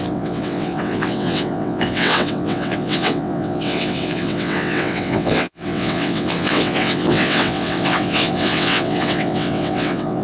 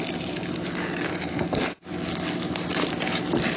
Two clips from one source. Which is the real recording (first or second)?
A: second